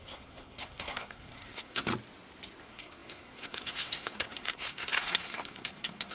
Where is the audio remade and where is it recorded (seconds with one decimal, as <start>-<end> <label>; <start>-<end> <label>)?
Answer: 0.0-1.9 remade; 1.9-2.6 recorded; 2.6-6.1 remade